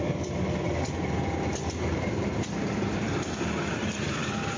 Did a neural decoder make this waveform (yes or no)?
yes